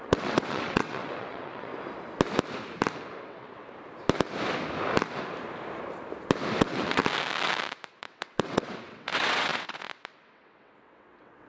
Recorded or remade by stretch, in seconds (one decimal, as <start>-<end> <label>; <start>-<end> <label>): 0.0-1.7 remade; 1.7-3.2 recorded; 3.2-3.6 remade; 3.6-6.6 recorded; 6.6-7.0 remade; 7.0-7.9 recorded; 7.9-11.5 remade